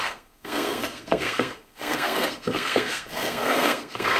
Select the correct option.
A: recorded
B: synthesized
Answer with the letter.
B